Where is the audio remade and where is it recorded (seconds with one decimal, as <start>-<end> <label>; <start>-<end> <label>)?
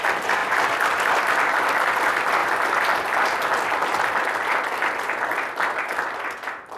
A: 0.0-6.8 recorded